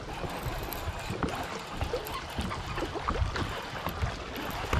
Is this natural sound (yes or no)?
yes